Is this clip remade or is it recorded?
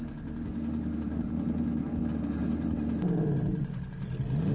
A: recorded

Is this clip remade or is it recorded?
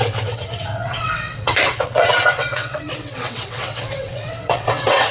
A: remade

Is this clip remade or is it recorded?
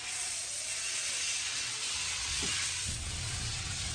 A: remade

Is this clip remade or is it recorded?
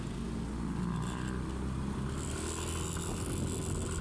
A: recorded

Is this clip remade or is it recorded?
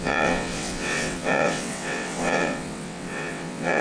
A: remade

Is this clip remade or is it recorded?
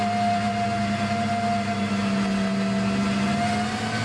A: recorded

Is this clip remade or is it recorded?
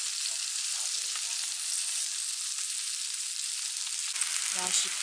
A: recorded